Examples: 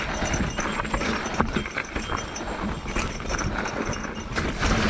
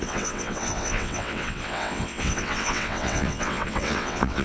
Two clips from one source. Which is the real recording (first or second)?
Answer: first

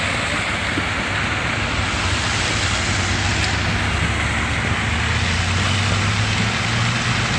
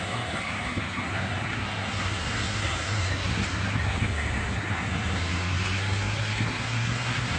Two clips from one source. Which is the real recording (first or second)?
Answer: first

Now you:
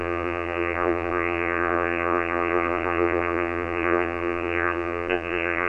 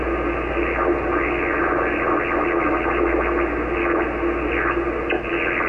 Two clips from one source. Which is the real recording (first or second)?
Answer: second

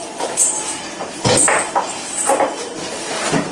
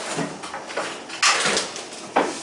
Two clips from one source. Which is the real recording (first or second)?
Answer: second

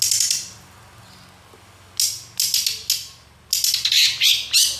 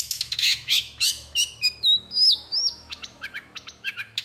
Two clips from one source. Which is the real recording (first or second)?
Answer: first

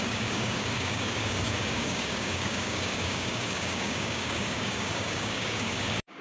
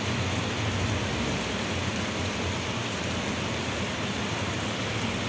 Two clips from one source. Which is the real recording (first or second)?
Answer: second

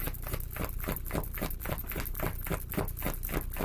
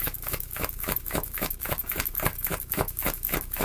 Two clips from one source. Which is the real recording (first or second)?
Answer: first